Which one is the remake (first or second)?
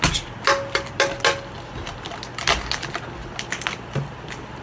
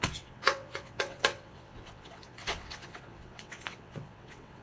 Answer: second